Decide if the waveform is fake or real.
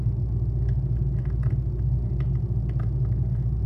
real